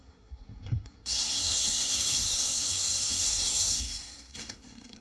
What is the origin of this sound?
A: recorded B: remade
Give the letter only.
B